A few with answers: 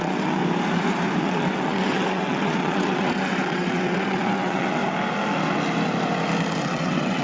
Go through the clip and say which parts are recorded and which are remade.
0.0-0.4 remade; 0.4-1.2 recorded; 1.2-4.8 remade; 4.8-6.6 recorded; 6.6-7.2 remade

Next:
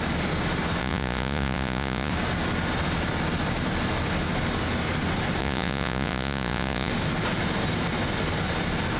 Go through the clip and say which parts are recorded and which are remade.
0.0-0.8 recorded; 0.8-2.1 remade; 2.1-5.4 recorded; 5.4-6.9 remade; 6.9-9.0 recorded

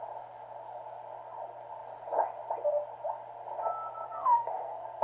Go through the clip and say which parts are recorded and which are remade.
0.0-4.1 recorded; 4.1-5.0 remade

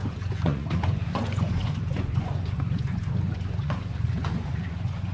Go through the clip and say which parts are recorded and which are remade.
0.0-5.1 remade

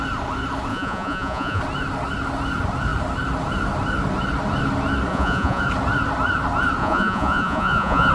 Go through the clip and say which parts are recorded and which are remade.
0.0-0.7 recorded; 0.7-1.6 remade; 1.6-5.1 recorded; 5.1-5.6 remade; 5.6-6.8 recorded; 6.8-8.1 remade

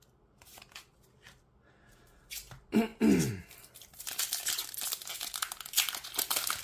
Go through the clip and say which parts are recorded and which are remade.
0.0-6.6 recorded

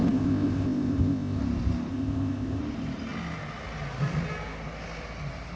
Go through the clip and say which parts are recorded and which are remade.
0.0-1.4 remade; 1.4-1.9 recorded; 1.9-2.6 remade; 2.6-5.6 recorded